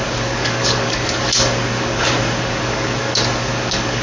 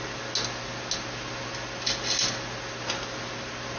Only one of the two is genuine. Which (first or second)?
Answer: second